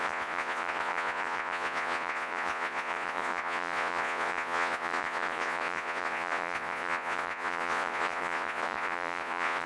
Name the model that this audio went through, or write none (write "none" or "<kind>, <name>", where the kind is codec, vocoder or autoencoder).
vocoder, Vocos